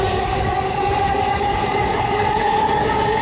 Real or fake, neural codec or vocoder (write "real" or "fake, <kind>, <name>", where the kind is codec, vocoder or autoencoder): fake, codec, DAC